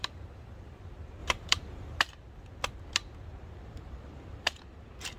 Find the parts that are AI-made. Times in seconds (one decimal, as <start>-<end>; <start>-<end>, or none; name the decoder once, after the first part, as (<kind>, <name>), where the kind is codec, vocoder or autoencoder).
1.2-2.0 (vocoder, BigVGAN v2); 3.3-4.6